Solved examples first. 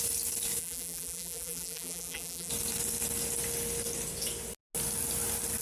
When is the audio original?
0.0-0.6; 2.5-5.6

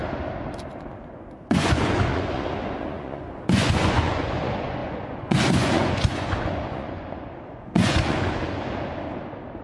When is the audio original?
0.0-0.8; 8.4-9.6